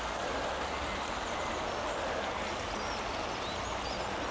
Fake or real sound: real